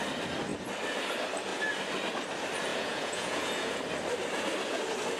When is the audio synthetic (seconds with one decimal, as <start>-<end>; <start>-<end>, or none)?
2.7-3.8